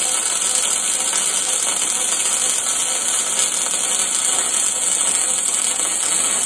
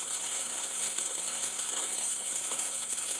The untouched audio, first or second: first